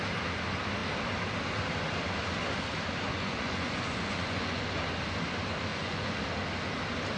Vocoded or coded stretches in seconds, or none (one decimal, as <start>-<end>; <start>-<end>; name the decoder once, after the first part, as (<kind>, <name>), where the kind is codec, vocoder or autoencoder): 3.1-4.6 (vocoder, Vocos); 5.7-6.2